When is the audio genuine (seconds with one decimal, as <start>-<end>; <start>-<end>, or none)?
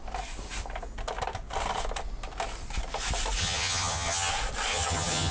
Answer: 0.0-3.4; 4.3-4.7